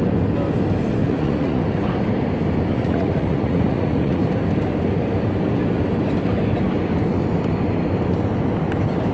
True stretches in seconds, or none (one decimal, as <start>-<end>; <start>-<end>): 0.0-1.0; 1.6-2.7; 4.2-9.1